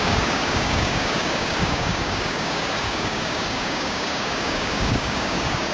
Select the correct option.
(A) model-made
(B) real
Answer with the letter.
A